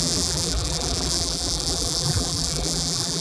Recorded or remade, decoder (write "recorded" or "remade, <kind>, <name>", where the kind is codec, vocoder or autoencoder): remade, vocoder, BigVGAN v2